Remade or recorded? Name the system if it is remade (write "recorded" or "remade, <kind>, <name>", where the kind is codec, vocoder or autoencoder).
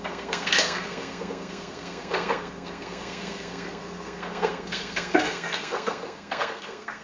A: remade, codec, SNAC